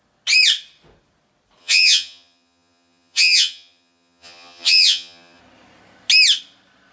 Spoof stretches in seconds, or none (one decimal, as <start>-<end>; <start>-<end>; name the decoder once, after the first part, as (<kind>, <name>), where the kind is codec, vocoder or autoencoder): 1.6-5.4 (vocoder, HiFi-GAN)